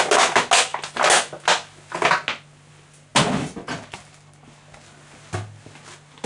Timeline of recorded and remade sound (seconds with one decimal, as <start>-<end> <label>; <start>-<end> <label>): 0.0-6.3 recorded